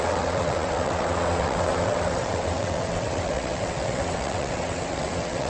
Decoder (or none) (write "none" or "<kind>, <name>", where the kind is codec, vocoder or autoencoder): vocoder, WaveNeXt